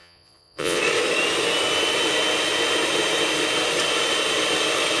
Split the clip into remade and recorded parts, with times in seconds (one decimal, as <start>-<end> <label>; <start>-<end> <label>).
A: 0.0-0.8 remade; 0.8-5.0 recorded